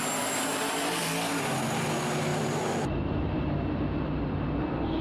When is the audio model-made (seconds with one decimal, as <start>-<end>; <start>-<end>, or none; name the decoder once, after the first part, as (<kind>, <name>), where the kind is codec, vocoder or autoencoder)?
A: 0.0-1.0 (vocoder, BigVGAN v2); 2.3-3.5